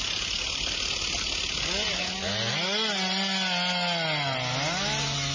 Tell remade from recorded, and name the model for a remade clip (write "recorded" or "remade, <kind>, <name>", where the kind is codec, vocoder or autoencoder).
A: recorded